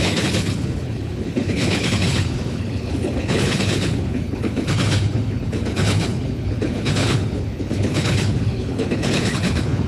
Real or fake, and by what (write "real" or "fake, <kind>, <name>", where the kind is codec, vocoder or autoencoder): fake, codec, HILCodec